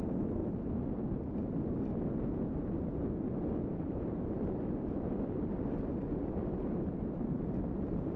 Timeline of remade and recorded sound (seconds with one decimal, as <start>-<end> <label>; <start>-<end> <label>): 0.0-8.2 recorded